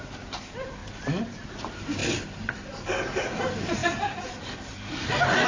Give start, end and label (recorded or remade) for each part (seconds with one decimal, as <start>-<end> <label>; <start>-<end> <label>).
0.0-0.8 remade; 0.8-1.5 recorded; 1.5-2.0 remade; 2.0-3.2 recorded; 3.2-5.5 remade